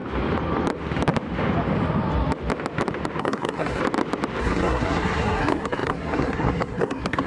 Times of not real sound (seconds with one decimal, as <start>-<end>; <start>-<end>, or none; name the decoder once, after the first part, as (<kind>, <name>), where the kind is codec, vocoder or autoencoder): 3.2-3.8 (codec, SNAC); 4.4-7.3